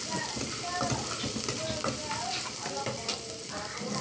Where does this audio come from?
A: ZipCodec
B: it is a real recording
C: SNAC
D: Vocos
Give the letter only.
B